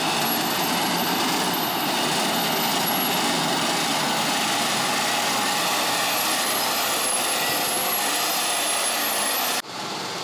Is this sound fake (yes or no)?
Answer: no